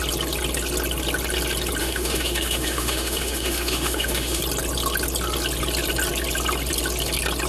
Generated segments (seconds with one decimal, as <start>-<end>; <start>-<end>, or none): 1.8-4.4